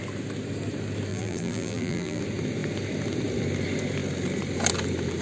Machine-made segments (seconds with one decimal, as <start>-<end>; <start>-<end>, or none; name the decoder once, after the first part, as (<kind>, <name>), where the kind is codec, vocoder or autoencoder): 1.1-2.2 (vocoder, BigVGAN v2)